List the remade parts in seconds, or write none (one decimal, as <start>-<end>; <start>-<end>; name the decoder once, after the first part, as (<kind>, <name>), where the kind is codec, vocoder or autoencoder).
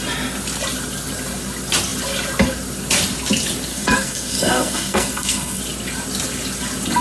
3.7-5.6 (codec, SNAC)